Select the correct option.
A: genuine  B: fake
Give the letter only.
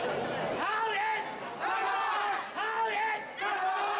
A